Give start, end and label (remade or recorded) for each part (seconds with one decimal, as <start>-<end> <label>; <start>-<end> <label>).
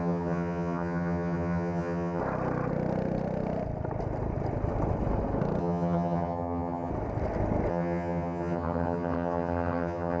0.0-2.2 remade; 2.2-5.6 recorded; 5.6-6.9 remade; 6.9-7.7 recorded; 7.7-10.2 remade